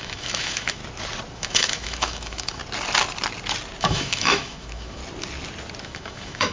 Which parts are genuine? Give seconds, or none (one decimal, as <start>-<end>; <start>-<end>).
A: 0.8-1.3; 2.6-3.8; 5.0-5.8